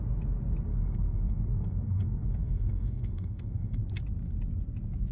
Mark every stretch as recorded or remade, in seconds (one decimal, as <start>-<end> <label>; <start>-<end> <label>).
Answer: 0.0-0.7 recorded; 0.7-3.8 remade; 3.8-5.1 recorded